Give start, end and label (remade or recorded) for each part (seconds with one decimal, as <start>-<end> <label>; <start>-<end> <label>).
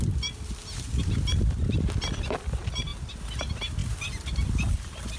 0.0-5.2 recorded